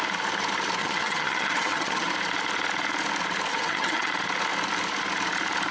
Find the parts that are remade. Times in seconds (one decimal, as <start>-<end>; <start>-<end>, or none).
0.8-2.1; 3.5-4.1